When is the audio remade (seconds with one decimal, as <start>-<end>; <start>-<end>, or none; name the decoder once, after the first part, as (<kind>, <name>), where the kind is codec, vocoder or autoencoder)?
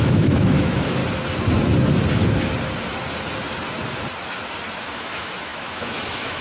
0.0-1.0 (autoencoder, DAC-VAE); 4.8-6.4